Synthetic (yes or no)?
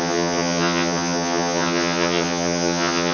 yes